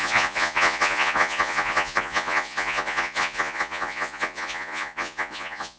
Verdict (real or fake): fake